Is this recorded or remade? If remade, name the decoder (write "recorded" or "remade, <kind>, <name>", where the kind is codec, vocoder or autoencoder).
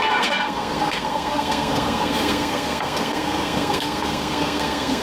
remade, codec, SNAC